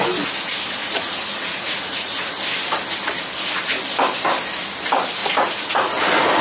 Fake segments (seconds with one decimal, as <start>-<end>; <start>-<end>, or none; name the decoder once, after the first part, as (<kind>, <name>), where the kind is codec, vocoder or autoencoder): 0.8-2.4 (vocoder, Vocos); 5.2-5.9